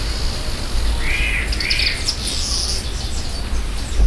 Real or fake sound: real